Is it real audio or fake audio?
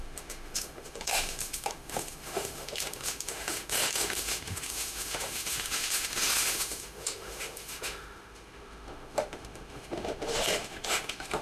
fake